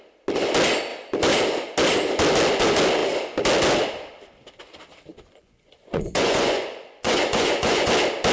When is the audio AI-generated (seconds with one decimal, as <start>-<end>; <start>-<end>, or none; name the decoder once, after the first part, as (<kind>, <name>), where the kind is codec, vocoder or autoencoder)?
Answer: 5.1-7.9 (vocoder, Vocos)